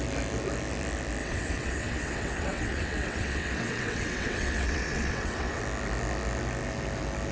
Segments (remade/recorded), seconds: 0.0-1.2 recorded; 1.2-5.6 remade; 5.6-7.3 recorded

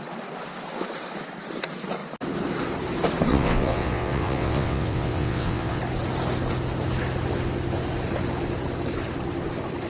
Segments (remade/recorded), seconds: 0.0-3.3 recorded; 3.3-5.8 remade; 5.8-9.9 recorded

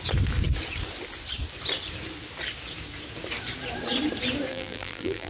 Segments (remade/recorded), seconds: 0.0-4.5 recorded; 4.5-5.3 remade

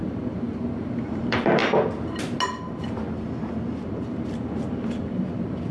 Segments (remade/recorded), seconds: 0.0-1.6 remade; 1.6-2.6 recorded; 2.6-3.0 remade; 3.0-3.8 recorded; 3.8-5.7 remade